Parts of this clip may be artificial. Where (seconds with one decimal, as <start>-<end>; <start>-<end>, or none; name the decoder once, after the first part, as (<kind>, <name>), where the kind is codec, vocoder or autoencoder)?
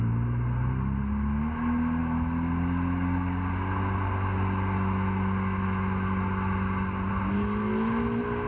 none